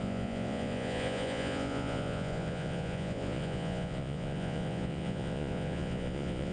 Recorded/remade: remade